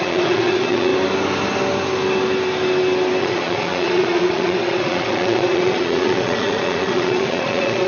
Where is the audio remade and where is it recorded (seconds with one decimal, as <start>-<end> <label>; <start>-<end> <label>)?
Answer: 0.0-0.9 remade; 0.9-3.2 recorded; 3.2-7.9 remade